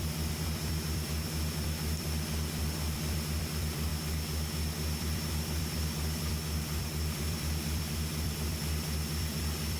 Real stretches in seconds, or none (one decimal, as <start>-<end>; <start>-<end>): 3.9-5.0